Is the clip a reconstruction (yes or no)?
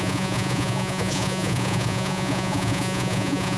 yes